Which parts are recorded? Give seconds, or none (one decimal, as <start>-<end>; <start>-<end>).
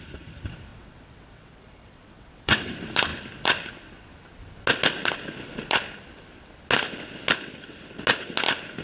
0.0-0.7; 2.7-8.8